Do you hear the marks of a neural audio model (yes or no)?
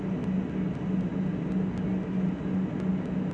no